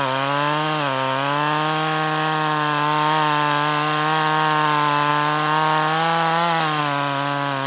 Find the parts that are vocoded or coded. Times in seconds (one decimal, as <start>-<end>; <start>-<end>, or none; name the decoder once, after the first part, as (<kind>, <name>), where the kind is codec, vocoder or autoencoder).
none